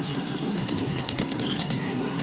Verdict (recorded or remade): remade